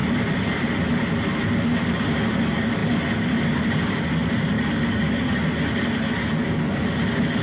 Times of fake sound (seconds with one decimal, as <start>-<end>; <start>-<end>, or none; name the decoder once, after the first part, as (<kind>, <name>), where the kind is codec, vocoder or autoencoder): none